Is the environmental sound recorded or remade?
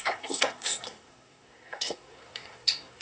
remade